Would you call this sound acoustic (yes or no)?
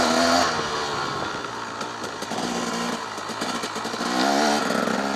yes